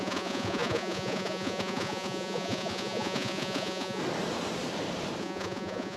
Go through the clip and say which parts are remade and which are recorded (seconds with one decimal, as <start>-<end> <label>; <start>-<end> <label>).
0.0-4.0 remade; 4.0-5.2 recorded; 5.2-6.0 remade

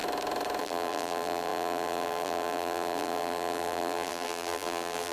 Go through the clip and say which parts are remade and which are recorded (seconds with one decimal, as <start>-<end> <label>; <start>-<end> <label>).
0.0-0.6 recorded; 0.6-5.1 remade

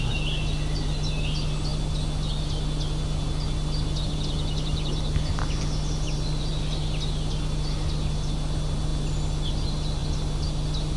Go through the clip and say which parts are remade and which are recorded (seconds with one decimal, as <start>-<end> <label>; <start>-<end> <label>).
0.0-11.0 recorded

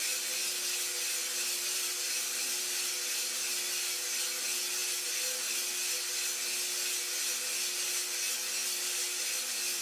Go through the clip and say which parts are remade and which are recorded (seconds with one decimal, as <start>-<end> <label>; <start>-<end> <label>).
0.0-1.2 recorded; 1.2-2.9 remade; 2.9-8.6 recorded; 8.6-9.8 remade

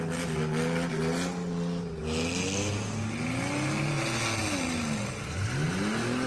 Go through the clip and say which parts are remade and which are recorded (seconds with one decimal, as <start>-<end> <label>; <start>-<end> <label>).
0.0-6.3 recorded